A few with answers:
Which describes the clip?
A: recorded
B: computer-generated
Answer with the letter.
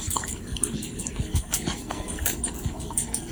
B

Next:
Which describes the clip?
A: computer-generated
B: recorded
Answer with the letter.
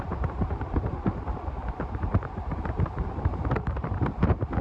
A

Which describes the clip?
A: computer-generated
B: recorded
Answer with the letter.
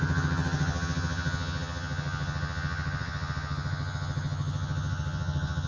A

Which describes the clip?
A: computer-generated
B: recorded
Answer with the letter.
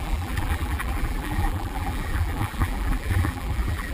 A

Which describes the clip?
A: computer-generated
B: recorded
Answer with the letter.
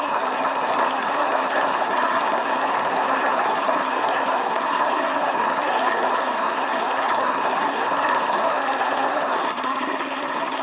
A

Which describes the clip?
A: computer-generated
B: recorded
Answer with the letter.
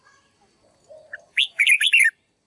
B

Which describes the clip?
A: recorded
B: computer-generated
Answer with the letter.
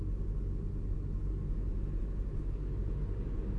A